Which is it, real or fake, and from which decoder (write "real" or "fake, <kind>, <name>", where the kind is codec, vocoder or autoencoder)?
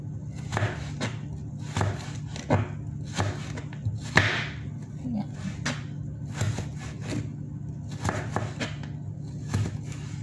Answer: real